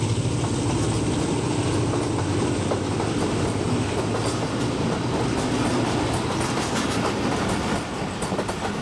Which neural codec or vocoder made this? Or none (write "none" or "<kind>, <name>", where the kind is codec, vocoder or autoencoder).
none